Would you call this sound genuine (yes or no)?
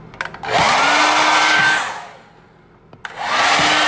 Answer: yes